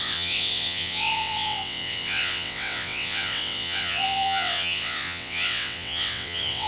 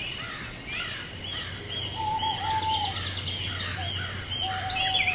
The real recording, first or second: second